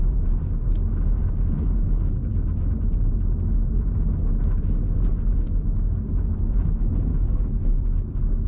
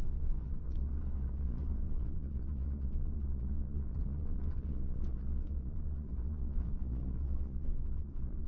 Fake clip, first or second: second